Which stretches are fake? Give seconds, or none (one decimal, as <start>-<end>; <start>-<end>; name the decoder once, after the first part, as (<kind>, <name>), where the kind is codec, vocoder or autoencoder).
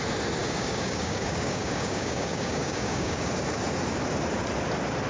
0.4-3.3 (codec, DAC)